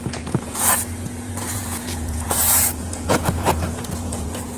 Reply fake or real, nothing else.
fake